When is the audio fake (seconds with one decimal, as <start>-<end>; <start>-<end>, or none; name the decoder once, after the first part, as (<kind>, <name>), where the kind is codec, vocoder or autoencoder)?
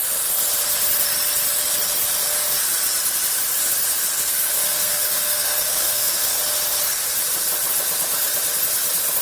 4.1-6.4 (codec, SNAC)